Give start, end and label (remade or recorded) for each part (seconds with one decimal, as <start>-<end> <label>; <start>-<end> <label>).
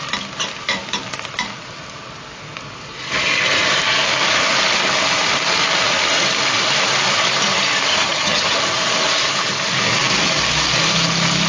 0.0-7.9 recorded; 7.9-8.6 remade; 8.6-11.5 recorded